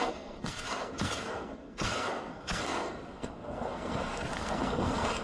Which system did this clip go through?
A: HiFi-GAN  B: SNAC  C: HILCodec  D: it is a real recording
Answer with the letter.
B